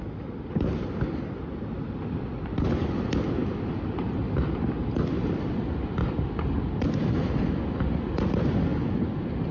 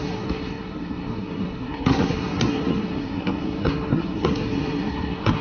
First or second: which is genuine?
first